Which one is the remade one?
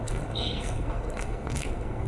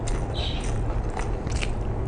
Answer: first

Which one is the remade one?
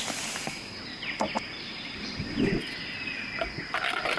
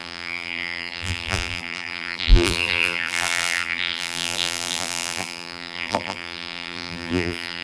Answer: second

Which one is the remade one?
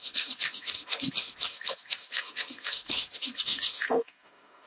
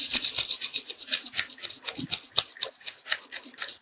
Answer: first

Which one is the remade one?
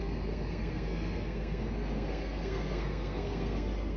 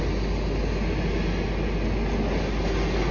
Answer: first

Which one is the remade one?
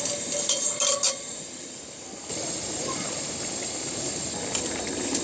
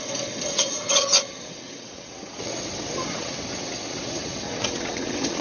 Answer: second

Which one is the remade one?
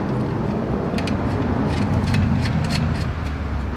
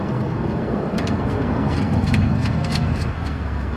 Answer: second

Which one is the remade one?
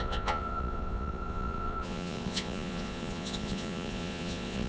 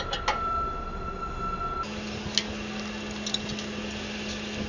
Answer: first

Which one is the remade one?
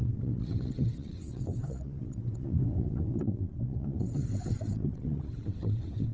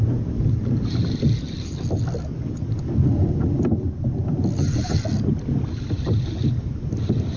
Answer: first